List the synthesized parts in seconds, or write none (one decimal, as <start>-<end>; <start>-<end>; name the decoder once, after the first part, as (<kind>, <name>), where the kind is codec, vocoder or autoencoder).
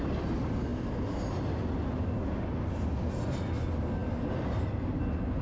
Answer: none